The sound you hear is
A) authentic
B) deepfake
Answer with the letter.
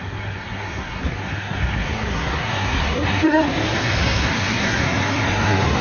B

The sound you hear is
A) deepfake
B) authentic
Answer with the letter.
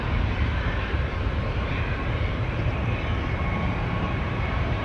A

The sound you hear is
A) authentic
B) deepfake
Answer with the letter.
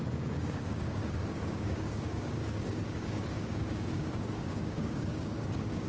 B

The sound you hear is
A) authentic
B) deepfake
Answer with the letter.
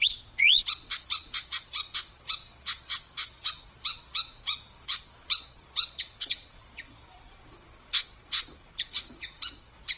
B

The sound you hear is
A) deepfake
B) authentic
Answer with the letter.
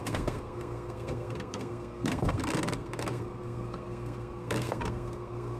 A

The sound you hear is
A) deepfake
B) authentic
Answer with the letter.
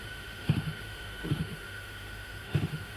A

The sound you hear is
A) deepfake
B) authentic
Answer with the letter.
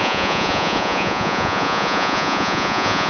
A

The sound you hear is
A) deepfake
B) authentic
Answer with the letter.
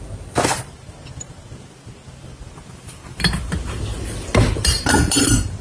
B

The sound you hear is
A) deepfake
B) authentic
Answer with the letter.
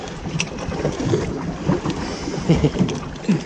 B